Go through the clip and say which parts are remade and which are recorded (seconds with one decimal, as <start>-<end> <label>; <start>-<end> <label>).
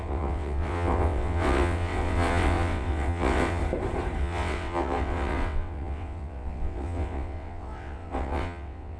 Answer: 0.0-3.6 remade; 3.6-4.2 recorded; 4.2-9.0 remade